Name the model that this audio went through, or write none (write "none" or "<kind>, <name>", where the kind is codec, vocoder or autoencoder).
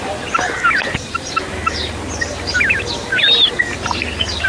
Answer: none